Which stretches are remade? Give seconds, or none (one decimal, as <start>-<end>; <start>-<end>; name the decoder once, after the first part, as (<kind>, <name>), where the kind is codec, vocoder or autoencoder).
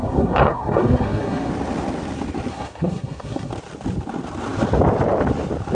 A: 0.0-1.5 (codec, SNAC); 2.5-3.5